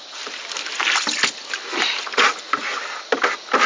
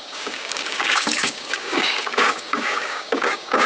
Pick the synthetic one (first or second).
second